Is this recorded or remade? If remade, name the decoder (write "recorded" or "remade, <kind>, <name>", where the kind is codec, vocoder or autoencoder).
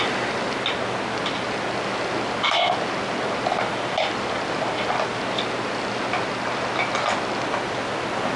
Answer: recorded